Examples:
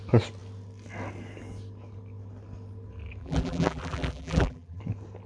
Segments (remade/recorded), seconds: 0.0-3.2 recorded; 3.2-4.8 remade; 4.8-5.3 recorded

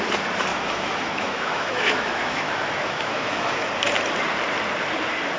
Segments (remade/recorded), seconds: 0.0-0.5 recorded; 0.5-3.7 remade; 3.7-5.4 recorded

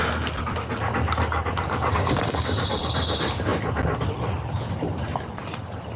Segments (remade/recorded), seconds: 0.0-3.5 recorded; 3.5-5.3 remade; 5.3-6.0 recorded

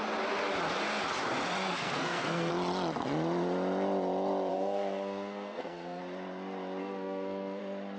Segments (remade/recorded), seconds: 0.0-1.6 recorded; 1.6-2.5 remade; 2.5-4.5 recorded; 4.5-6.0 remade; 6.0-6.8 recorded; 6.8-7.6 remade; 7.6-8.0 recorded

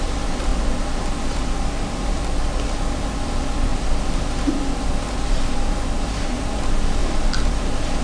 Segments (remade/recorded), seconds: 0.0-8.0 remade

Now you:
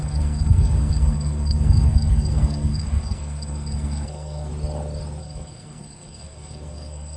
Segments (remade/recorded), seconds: 0.0-4.5 remade; 4.5-5.2 recorded; 5.2-7.2 remade

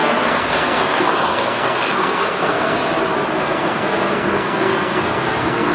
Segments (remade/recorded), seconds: 0.0-2.8 remade; 2.8-3.4 recorded; 3.4-5.7 remade

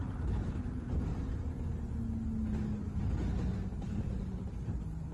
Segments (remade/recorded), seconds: 0.0-1.1 remade; 1.1-3.9 recorded; 3.9-5.1 remade